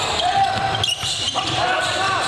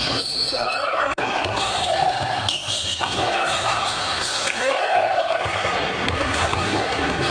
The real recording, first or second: first